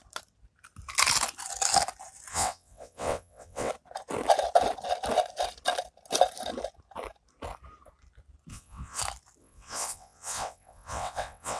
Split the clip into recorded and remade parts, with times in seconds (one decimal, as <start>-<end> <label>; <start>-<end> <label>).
0.0-2.3 recorded; 2.3-3.7 remade; 3.7-8.5 recorded; 8.5-9.0 remade; 9.0-9.4 recorded; 9.4-11.6 remade